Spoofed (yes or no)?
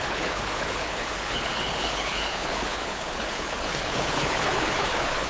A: yes